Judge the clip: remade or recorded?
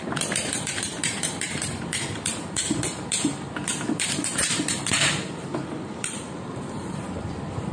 remade